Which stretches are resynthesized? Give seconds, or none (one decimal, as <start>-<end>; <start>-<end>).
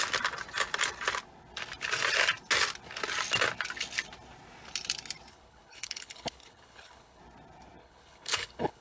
5.3-7.2; 7.8-8.8